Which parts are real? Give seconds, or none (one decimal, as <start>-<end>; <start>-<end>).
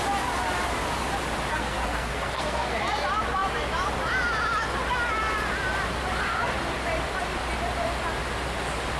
0.0-1.5; 2.8-9.0